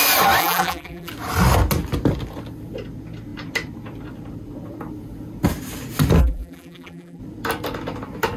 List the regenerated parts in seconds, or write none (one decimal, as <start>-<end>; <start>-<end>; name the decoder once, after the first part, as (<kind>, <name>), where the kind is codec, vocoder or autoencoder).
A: 0.4-1.1 (vocoder, BigVGAN v2); 6.2-7.2